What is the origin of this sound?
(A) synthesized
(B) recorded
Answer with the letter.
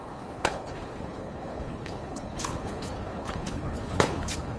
A